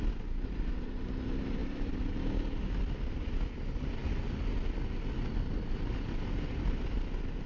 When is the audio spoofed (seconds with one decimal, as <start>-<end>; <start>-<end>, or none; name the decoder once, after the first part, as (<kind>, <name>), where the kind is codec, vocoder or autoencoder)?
none